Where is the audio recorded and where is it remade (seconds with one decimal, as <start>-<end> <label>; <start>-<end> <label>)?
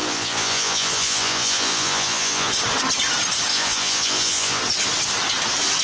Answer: 0.0-2.5 remade; 2.5-3.5 recorded; 3.5-4.6 remade; 4.6-5.8 recorded